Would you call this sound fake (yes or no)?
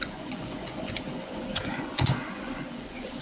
yes